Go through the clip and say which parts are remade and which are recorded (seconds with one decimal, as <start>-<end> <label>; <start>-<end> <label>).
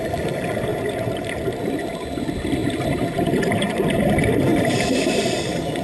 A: 0.0-0.7 recorded; 0.7-1.2 remade; 1.2-2.6 recorded; 2.6-4.0 remade; 4.0-4.5 recorded; 4.5-5.1 remade; 5.1-5.8 recorded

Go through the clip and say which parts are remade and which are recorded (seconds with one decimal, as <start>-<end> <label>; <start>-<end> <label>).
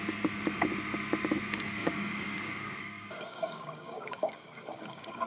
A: 0.0-1.8 recorded; 1.8-5.3 remade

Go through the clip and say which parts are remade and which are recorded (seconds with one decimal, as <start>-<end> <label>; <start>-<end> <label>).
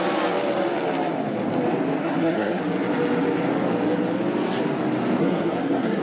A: 0.0-2.0 recorded; 2.0-2.6 remade; 2.6-5.2 recorded; 5.2-6.0 remade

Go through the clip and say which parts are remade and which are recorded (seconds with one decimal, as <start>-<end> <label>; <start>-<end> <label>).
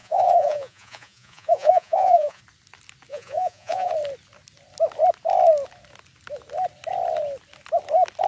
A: 0.0-2.4 remade; 2.4-3.1 recorded; 3.1-3.9 remade; 3.9-8.3 recorded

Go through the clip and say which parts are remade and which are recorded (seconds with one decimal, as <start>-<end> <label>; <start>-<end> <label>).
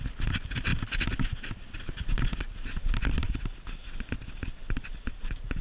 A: 0.0-4.9 recorded; 4.9-5.6 remade